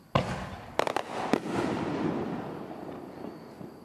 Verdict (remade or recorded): recorded